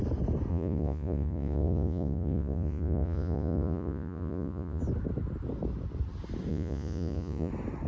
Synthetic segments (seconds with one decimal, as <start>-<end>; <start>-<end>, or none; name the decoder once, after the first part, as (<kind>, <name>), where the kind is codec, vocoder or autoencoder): 0.5-4.8 (vocoder, Vocos); 6.5-7.5